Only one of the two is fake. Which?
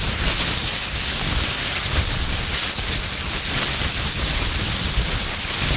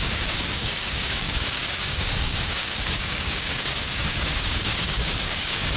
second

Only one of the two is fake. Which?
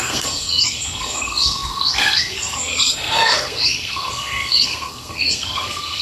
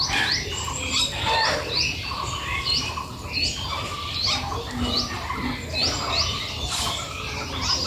first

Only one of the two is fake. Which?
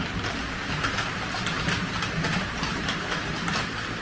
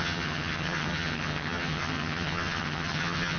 second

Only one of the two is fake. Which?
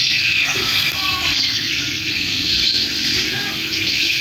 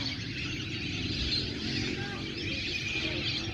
first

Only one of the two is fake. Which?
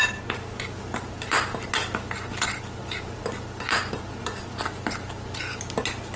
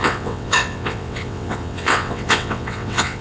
second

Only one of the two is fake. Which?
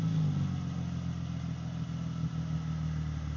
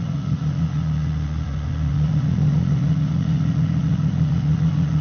second